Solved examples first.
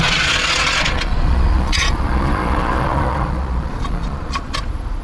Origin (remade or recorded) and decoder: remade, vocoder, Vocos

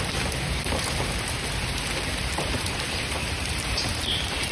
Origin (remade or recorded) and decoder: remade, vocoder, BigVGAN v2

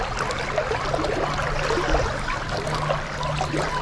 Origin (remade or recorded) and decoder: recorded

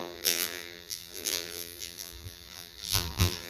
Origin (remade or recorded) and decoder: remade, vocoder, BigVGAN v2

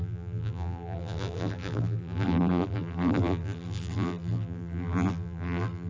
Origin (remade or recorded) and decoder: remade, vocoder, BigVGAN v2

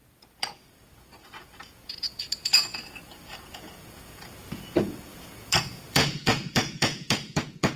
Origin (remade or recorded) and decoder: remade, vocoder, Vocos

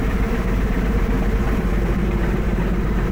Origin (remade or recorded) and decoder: remade, vocoder, BigVGAN v2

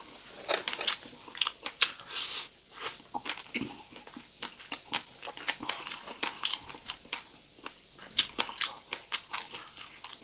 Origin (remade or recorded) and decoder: recorded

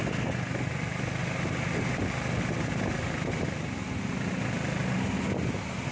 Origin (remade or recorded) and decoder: recorded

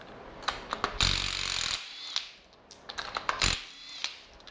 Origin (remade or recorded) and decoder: recorded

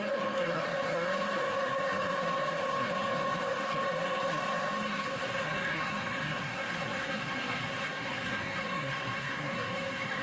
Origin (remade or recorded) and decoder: remade, codec, SNAC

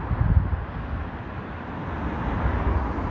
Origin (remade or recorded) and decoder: recorded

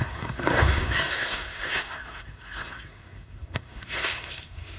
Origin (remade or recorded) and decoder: remade, codec, SNAC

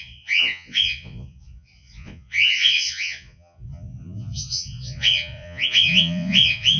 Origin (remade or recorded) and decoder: remade, vocoder, Vocos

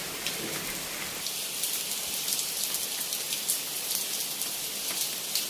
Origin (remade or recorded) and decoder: recorded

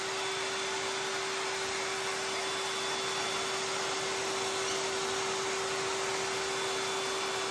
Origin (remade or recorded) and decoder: recorded